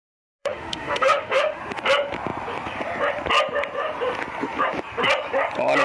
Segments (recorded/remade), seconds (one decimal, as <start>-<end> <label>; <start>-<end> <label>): 0.0-0.4 recorded; 0.4-1.6 remade; 1.6-5.8 recorded